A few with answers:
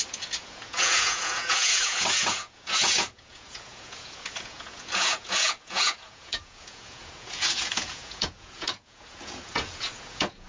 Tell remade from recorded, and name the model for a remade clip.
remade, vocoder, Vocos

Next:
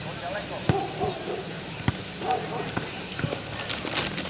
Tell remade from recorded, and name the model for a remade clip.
recorded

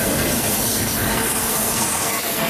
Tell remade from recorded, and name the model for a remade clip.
remade, codec, SNAC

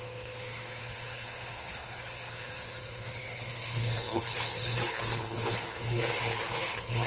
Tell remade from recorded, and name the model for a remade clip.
remade, codec, HILCodec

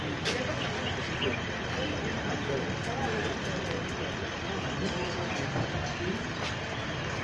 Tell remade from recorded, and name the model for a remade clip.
recorded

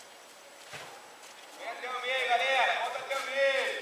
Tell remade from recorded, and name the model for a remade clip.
recorded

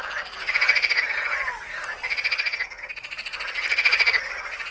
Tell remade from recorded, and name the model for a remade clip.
recorded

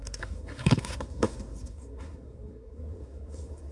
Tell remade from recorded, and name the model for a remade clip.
remade, codec, SNAC